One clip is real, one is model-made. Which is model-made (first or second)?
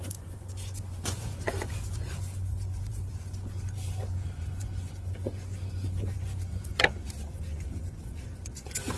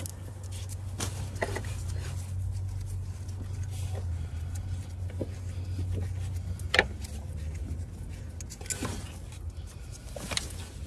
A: first